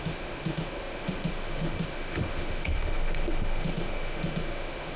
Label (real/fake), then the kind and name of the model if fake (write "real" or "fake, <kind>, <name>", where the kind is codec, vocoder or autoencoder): fake, autoencoder, DAC-VAE